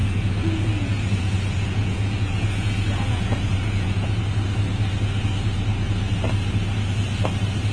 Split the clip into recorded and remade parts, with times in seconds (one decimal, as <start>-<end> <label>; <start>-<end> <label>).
0.0-4.2 remade; 4.2-7.7 recorded